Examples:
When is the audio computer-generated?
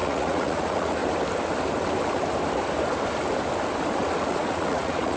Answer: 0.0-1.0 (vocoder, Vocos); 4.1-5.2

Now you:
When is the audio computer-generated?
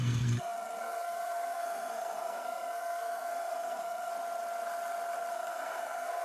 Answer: 0.0-4.1 (codec, SNAC); 5.3-6.2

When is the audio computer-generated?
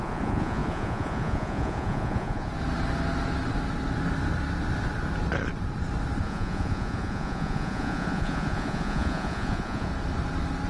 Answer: 0.0-2.5 (vocoder, Vocos); 6.2-9.9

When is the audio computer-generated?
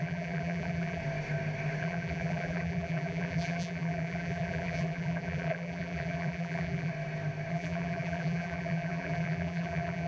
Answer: 0.0-1.0 (vocoder, BigVGAN v2); 1.8-6.9; 7.5-10.1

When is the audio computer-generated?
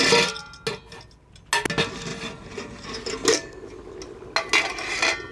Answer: 2.1-2.9 (vocoder, BigVGAN v2)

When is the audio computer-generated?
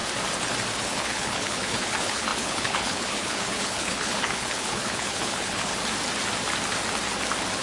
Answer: 0.8-5.7 (codec, HILCodec)